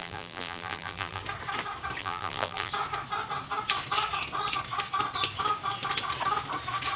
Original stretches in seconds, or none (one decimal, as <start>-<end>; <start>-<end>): 1.2-2.0; 2.7-7.0